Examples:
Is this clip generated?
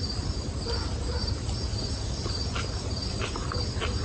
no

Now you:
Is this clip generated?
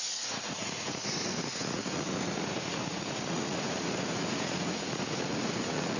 yes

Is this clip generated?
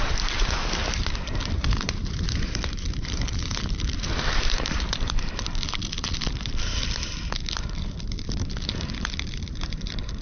yes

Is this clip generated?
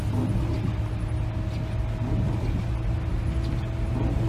no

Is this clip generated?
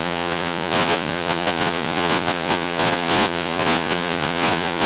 yes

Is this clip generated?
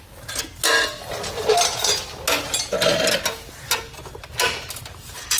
no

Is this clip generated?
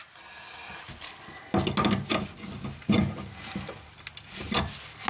no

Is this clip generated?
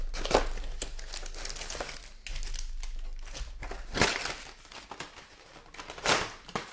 no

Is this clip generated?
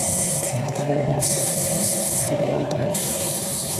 yes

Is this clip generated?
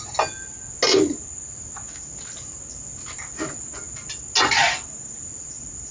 no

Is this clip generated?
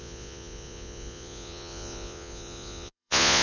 yes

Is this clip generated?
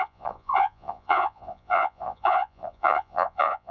yes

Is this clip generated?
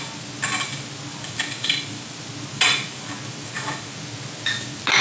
no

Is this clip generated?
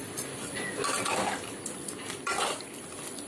no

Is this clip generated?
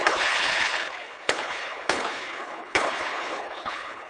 yes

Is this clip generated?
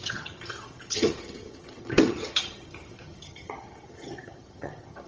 yes